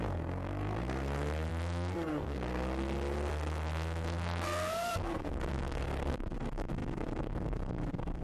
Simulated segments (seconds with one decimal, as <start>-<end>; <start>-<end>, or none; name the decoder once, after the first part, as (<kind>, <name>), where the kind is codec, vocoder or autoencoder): 0.0-8.2 (codec, SNAC)